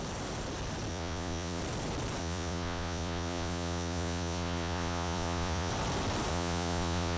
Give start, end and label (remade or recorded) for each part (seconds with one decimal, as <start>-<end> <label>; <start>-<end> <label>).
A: 0.0-0.9 recorded; 0.9-1.6 remade; 1.6-2.2 recorded; 2.2-5.7 remade; 5.7-6.3 recorded; 6.3-7.2 remade